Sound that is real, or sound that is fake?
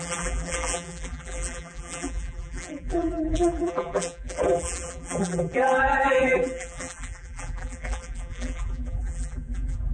fake